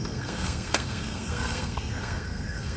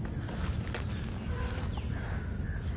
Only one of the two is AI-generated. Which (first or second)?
first